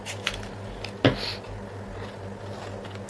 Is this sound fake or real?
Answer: real